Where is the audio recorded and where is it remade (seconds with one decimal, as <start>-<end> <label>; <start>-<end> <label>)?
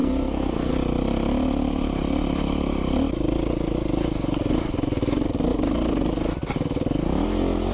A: 0.0-0.7 remade; 0.7-7.7 recorded